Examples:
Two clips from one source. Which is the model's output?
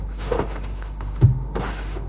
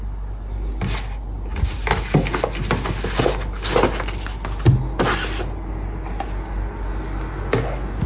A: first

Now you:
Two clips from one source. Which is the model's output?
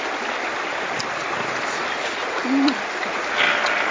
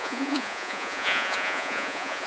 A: second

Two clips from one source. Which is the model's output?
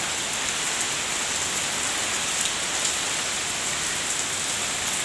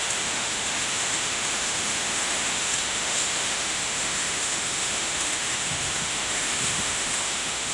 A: second